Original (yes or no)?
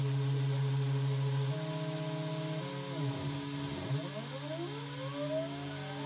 yes